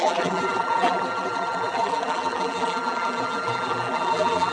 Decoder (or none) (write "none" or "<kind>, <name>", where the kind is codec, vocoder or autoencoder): vocoder, BigVGAN v2